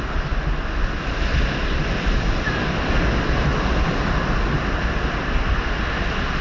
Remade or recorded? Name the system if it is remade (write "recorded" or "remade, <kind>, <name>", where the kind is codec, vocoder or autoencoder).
recorded